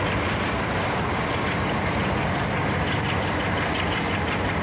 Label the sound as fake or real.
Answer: real